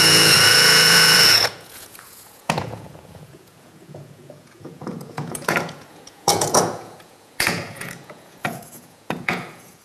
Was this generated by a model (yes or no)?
yes